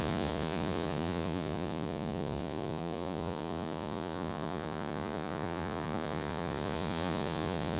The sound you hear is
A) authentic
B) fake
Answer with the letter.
B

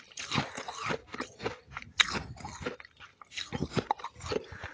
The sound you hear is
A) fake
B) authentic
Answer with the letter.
B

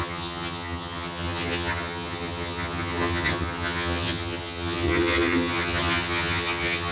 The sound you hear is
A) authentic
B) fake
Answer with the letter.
B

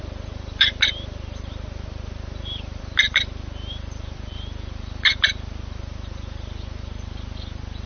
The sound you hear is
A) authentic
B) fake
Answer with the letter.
B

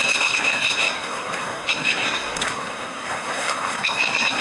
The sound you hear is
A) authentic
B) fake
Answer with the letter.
B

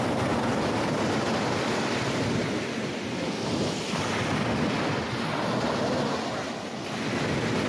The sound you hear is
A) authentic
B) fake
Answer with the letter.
A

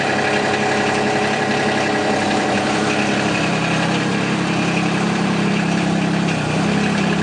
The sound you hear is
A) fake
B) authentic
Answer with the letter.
A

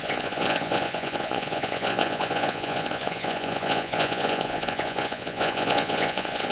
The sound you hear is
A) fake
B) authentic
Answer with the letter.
A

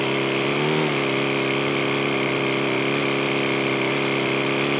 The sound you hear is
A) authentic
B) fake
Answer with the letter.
A